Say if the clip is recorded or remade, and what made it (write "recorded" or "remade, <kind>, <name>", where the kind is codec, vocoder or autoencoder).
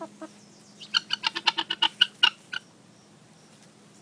recorded